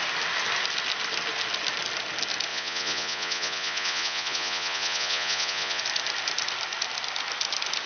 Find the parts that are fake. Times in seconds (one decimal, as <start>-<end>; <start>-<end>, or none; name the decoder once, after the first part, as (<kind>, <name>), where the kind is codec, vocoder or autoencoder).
2.5-5.8 (vocoder, Vocos)